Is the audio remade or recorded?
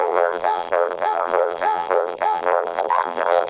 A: remade